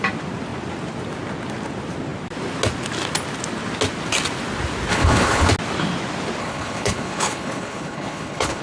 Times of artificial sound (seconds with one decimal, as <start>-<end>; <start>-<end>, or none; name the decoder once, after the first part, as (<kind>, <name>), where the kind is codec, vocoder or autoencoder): 4.9-5.5 (codec, HILCodec); 6.4-8.6